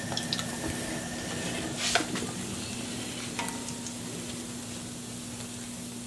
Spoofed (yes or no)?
no